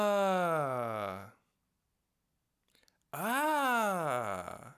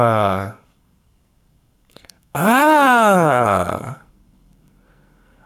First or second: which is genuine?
first